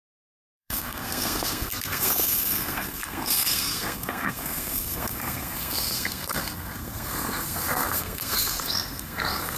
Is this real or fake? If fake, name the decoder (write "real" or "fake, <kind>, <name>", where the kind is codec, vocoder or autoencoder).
fake, codec, SNAC